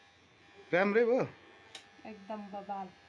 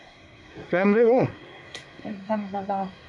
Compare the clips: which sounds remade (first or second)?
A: second